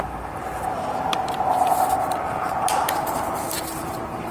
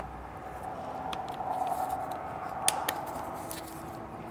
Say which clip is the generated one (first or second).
first